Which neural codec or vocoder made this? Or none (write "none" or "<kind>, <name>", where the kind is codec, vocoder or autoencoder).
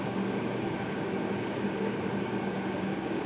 codec, DAC